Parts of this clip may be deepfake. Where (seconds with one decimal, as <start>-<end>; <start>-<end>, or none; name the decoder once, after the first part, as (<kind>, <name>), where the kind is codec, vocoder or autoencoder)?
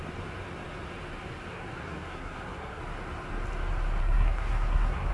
1.5-2.8 (codec, SNAC); 4.0-5.1